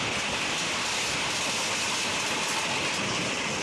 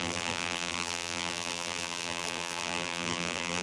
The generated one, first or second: second